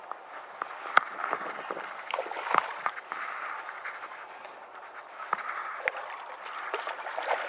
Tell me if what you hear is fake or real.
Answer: real